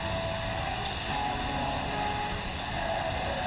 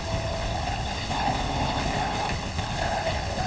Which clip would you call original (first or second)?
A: first